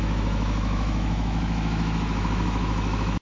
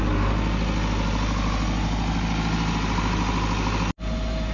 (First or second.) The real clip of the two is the second